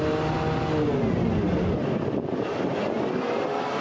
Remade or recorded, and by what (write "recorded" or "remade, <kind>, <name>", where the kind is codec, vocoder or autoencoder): recorded